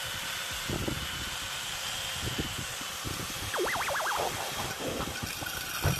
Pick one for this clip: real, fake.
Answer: real